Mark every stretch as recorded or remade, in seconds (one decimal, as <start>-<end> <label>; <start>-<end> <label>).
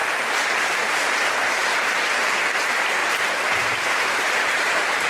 0.0-5.1 remade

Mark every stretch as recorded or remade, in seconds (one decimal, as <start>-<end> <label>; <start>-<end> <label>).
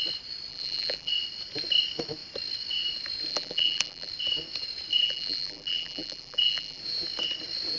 0.0-0.5 recorded; 0.5-1.1 remade; 1.1-3.3 recorded; 3.3-4.1 remade; 4.1-4.9 recorded; 4.9-6.8 remade; 6.8-7.8 recorded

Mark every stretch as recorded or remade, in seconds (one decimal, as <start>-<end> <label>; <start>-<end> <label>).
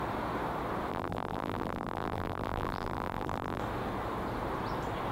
0.0-0.9 recorded; 0.9-3.6 remade; 3.6-5.1 recorded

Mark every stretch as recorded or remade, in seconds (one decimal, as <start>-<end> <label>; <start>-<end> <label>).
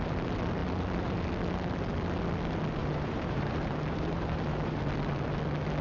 0.0-2.8 recorded; 2.8-4.8 remade; 4.8-5.8 recorded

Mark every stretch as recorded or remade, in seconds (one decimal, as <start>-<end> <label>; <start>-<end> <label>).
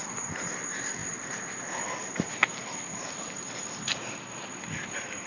0.0-5.3 recorded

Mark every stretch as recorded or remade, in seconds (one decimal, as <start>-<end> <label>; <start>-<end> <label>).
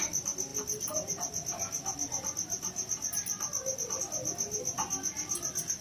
0.0-5.8 recorded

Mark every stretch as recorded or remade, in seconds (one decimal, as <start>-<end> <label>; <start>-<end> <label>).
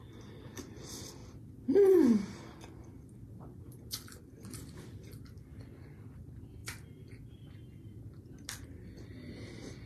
0.0-1.2 remade; 1.2-3.3 recorded; 3.3-8.4 remade; 8.4-9.9 recorded